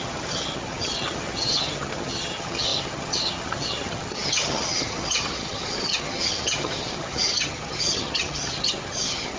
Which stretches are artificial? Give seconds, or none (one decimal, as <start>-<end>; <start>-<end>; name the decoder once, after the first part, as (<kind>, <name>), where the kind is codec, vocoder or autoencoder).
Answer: 0.0-9.4 (vocoder, HiFi-GAN)